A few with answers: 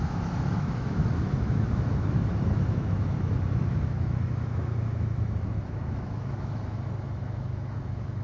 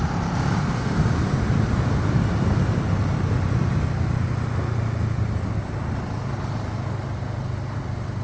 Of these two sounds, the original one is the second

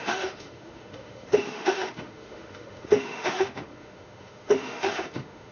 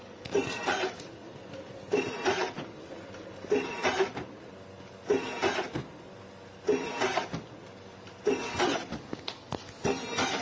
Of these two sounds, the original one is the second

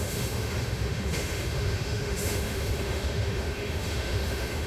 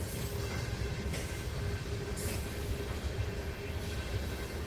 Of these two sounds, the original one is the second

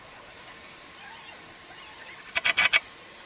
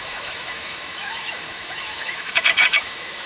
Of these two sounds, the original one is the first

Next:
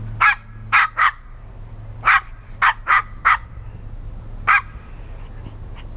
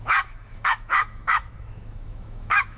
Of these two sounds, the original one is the first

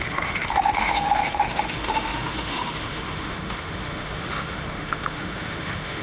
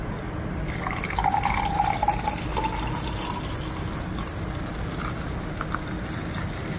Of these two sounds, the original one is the second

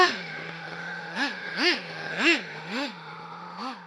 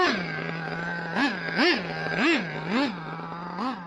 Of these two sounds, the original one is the second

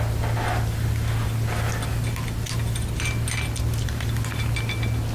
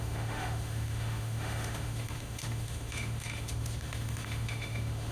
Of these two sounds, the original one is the first